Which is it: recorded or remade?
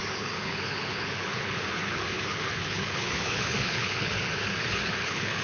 remade